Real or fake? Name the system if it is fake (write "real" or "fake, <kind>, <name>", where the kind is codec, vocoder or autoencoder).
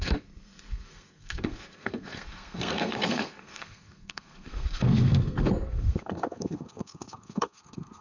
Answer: fake, codec, SNAC